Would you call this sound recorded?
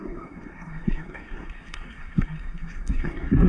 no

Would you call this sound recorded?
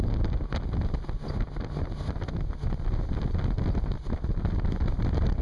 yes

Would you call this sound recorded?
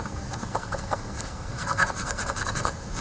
no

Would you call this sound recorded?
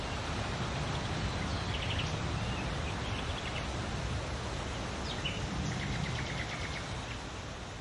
yes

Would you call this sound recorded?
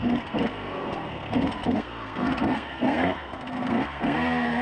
no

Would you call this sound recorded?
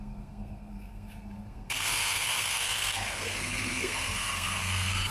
no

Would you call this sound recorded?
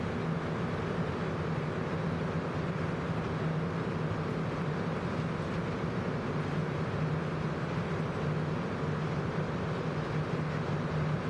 yes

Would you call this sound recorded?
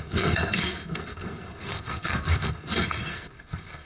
no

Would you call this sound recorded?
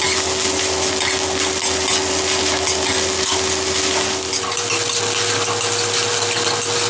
yes